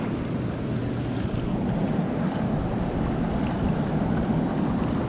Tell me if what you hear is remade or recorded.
recorded